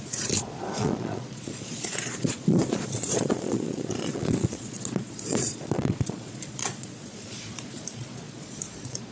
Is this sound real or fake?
fake